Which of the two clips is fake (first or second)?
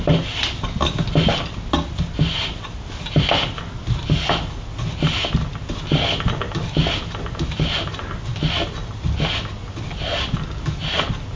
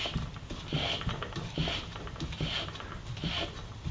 second